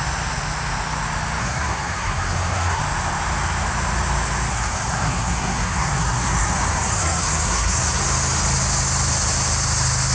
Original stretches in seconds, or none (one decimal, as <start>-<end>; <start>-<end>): 0.0-1.4; 2.8-4.5; 8.0-10.1

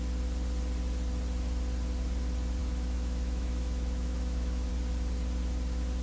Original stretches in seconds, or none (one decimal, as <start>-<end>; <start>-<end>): 0.0-2.6; 4.7-6.0

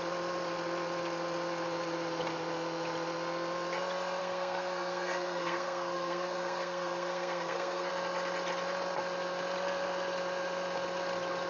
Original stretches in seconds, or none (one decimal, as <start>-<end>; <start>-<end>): 0.0-4.2; 7.9-11.5

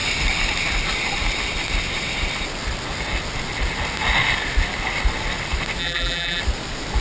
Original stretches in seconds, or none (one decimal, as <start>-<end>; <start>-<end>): 0.0-5.8; 6.4-7.0

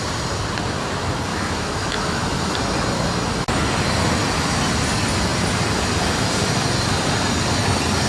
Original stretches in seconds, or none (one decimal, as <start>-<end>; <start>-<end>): 0.0-1.3; 2.2-8.1

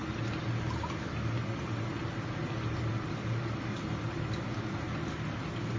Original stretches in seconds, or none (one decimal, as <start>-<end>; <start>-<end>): 0.0-5.8

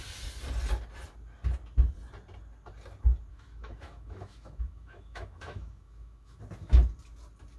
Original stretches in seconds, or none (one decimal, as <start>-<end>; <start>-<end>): 0.0-3.3; 6.4-7.6

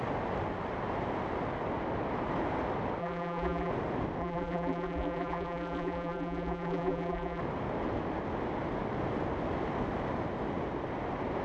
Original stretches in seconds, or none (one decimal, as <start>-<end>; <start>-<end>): 0.0-3.0; 3.7-4.2; 7.4-11.4